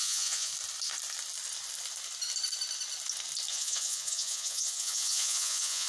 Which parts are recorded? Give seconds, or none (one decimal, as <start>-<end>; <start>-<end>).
0.5-3.5